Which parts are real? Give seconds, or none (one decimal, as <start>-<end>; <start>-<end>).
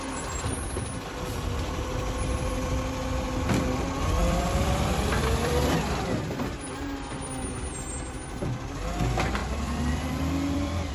0.0-4.2; 5.7-9.4